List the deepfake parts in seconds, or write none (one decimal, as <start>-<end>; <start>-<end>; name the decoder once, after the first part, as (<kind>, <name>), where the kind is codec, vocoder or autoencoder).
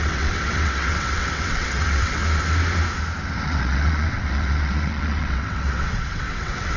0.0-2.2 (vocoder, WaveNeXt); 3.4-6.8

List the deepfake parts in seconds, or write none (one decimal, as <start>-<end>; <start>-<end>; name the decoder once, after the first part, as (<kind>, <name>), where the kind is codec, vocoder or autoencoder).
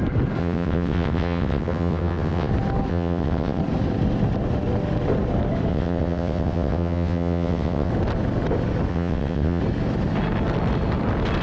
0.4-2.5 (vocoder, WaveNeXt); 2.9-3.6; 5.7-7.9; 8.9-9.6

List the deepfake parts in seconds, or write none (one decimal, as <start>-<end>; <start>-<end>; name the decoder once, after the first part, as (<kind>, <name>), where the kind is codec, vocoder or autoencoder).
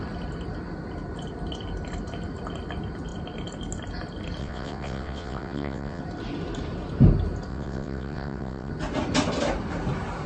4.4-6.0 (vocoder, WaveNeXt); 7.5-8.7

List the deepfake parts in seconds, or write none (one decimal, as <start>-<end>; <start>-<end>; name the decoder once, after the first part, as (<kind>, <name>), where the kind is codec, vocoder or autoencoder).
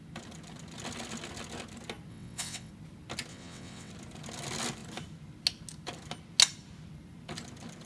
2.1-2.7 (vocoder, WaveNeXt); 3.3-3.9